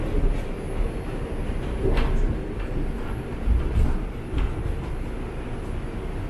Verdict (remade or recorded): recorded